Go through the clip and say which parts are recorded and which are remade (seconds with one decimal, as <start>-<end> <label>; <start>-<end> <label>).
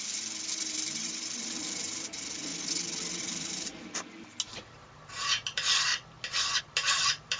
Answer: 0.0-2.5 remade; 2.5-3.2 recorded; 3.2-3.7 remade; 3.7-4.5 recorded; 4.5-5.9 remade; 5.9-6.6 recorded; 6.6-7.4 remade